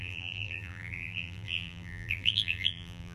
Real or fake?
fake